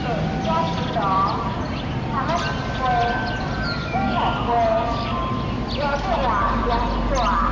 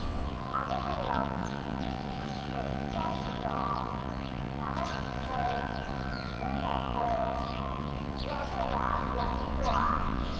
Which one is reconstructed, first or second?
second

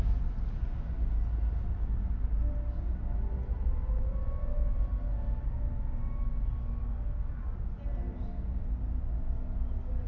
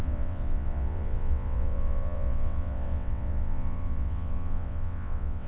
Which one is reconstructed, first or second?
second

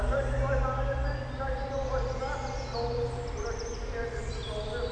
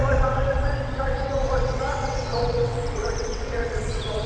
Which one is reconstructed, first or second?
second